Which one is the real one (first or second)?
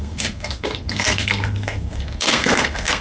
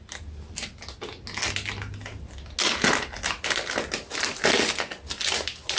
second